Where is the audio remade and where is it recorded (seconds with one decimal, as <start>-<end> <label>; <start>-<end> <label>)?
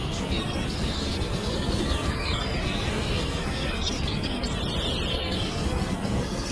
0.0-4.6 remade; 4.6-5.1 recorded; 5.1-6.5 remade